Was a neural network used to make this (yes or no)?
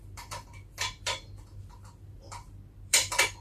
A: yes